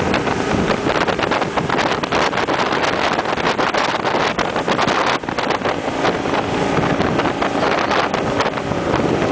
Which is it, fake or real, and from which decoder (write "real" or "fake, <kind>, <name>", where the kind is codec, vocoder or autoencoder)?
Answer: real